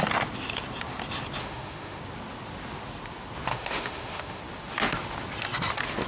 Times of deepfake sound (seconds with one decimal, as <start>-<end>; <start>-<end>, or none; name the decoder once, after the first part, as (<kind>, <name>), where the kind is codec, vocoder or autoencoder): 1.4-2.0 (autoencoder, DAC-VAE); 3.5-4.4